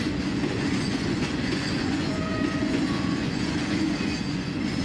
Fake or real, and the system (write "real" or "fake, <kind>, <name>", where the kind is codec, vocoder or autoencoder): fake, vocoder, Vocos